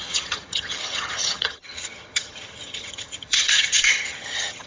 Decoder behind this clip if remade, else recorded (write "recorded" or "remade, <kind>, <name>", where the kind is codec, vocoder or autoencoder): remade, vocoder, HiFi-GAN